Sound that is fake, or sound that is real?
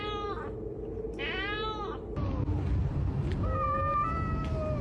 real